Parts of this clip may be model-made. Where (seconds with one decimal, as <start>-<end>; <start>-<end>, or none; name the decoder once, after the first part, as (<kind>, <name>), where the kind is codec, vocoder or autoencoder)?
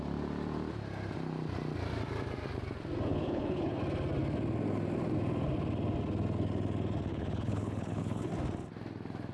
3.1-3.8 (codec, HILCodec); 7.1-8.3